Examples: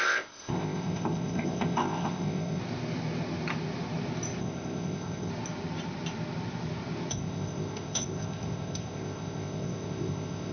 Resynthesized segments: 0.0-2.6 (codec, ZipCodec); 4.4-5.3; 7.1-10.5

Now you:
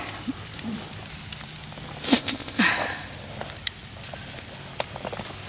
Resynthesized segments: 2.1-2.6 (codec, ZipCodec)

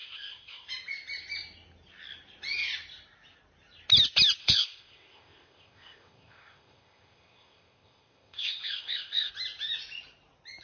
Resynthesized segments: 0.0-0.7 (codec, ZipCodec); 4.4-9.3

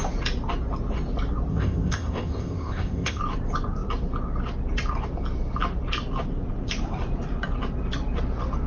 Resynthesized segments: 1.5-3.2 (codec, ZipCodec)

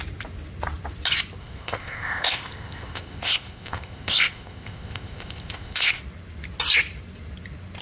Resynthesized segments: 1.4-6.0 (codec, ZipCodec)